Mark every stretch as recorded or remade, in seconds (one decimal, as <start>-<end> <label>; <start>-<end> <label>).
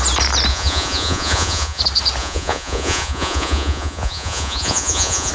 0.0-0.5 recorded; 0.5-1.8 remade; 1.8-2.2 recorded; 2.2-5.3 remade